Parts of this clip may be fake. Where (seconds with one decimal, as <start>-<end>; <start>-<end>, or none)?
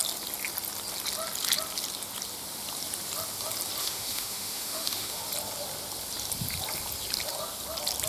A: 3.8-5.2